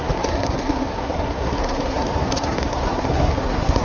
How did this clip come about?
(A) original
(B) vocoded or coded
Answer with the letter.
B